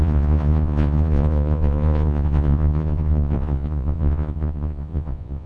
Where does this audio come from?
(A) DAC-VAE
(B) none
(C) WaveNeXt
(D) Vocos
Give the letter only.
D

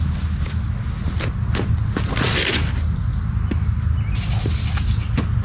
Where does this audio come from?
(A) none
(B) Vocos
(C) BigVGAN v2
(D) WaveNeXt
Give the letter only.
A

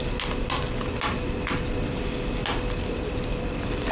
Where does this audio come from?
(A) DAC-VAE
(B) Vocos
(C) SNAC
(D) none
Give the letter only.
D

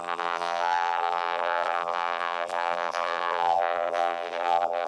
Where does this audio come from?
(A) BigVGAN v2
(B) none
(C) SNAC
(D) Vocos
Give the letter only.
A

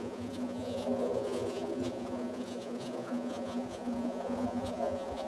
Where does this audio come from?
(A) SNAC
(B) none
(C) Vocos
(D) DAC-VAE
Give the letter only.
C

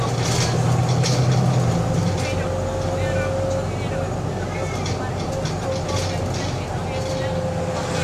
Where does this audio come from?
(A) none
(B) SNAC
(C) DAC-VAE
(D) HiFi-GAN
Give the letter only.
A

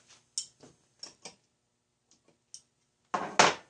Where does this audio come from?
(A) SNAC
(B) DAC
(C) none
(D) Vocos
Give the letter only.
C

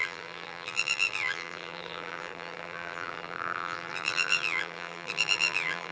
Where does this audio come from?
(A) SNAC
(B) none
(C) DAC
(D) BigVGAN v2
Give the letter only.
D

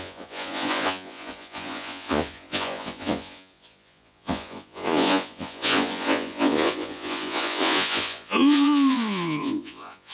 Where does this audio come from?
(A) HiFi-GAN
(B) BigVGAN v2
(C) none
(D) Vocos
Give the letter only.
D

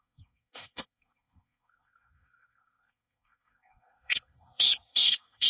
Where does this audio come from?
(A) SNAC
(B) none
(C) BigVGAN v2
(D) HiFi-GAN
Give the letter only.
A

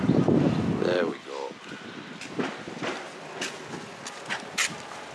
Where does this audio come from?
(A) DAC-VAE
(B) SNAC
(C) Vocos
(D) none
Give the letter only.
D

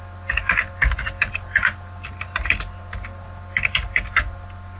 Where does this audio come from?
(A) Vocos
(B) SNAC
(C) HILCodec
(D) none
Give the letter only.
D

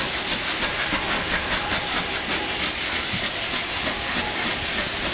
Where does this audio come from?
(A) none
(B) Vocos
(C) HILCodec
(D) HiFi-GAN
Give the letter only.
A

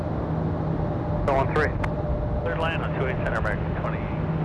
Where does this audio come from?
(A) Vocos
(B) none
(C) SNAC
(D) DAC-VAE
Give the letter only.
B